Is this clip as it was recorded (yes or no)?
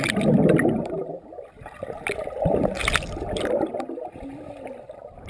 no